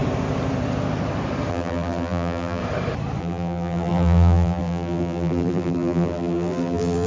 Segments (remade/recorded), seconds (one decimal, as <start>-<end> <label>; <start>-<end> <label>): 0.0-1.5 recorded; 1.5-2.6 remade; 2.6-3.2 recorded; 3.2-7.1 remade